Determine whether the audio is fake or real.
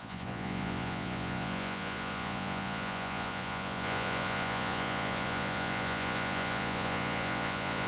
fake